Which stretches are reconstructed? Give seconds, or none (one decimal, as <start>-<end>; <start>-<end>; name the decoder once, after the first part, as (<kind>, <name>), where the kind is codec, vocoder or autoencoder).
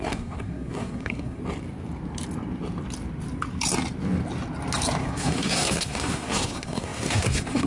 0.0-1.4 (codec, SNAC); 5.0-7.7